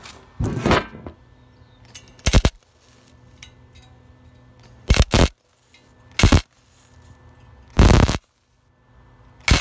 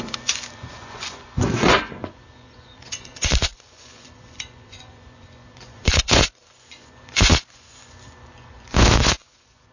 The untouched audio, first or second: first